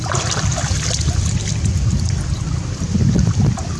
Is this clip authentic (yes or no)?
no